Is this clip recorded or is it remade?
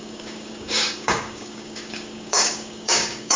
remade